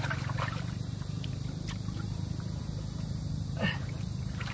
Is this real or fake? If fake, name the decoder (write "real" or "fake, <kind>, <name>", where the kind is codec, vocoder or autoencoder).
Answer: fake, vocoder, BigVGAN v2